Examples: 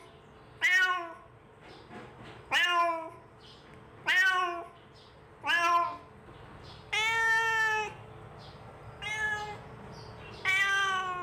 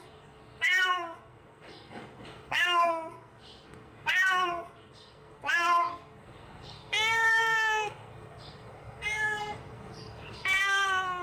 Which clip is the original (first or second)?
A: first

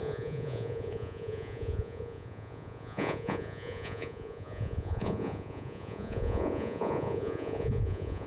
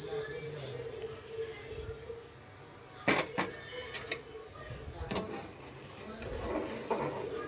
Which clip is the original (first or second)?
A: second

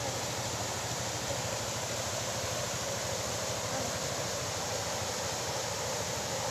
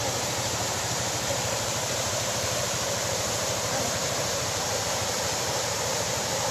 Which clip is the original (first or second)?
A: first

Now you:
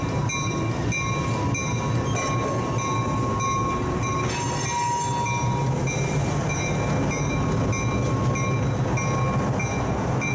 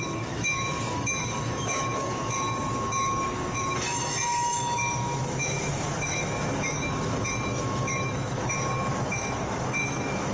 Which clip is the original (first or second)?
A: first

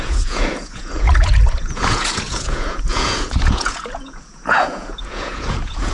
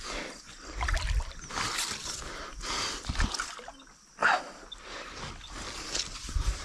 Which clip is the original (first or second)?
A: second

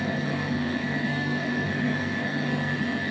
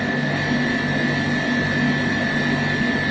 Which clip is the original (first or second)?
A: second